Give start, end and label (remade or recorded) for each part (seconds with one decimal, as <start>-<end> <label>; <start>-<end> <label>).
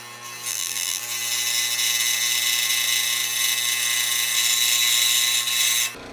0.0-0.5 recorded; 0.5-1.0 remade; 1.0-6.1 recorded